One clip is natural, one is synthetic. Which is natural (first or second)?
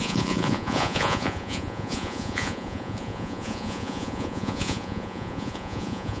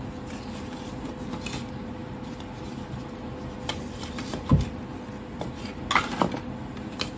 second